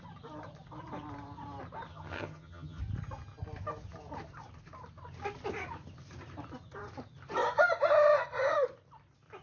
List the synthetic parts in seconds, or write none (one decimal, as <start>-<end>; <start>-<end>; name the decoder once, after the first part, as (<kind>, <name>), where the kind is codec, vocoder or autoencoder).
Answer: 1.9-2.8 (vocoder, HiFi-GAN)